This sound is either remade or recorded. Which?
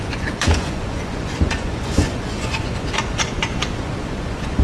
remade